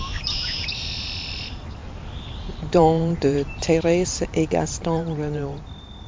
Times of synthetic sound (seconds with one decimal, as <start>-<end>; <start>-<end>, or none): 0.0-1.8; 2.6-6.1